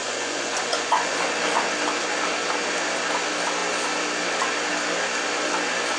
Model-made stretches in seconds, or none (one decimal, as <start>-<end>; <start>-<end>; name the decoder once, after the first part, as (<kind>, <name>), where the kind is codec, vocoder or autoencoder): 0.0-1.2 (vocoder, Vocos)

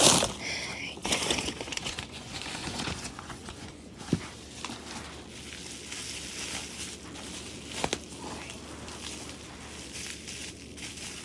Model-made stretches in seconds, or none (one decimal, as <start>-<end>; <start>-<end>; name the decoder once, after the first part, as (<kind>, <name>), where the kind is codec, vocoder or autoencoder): 1.0-4.1 (vocoder, Vocos)

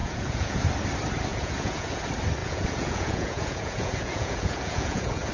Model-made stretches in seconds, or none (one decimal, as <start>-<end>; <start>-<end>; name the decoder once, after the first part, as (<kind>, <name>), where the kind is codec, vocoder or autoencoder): 0.0-0.6 (vocoder, Vocos); 1.3-2.0; 2.4-5.3

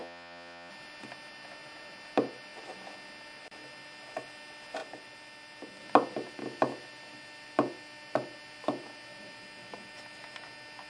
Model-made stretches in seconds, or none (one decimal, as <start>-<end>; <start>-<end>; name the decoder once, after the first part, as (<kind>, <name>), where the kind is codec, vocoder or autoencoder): 0.0-0.7 (vocoder, Vocos)

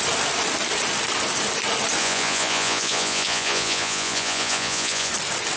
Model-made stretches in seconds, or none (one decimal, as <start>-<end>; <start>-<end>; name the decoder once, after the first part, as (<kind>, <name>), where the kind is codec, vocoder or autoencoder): 2.0-5.1 (vocoder, Vocos)